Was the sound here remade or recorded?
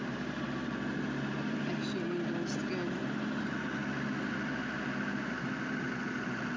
recorded